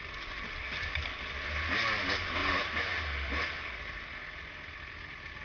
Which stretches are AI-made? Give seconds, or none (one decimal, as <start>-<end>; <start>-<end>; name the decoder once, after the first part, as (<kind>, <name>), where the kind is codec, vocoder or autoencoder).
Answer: none